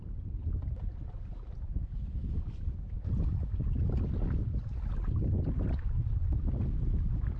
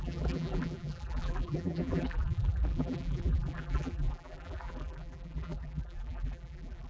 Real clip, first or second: first